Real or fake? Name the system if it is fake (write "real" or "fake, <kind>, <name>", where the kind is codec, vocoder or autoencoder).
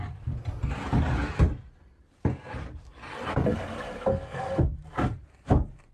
real